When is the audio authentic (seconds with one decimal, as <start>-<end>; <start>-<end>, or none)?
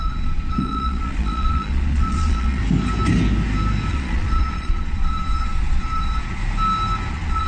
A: 2.6-3.9; 6.4-7.1